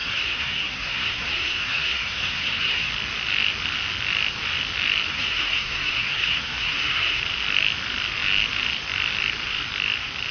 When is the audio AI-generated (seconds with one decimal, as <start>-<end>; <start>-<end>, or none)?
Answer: 0.0-2.9; 5.1-7.2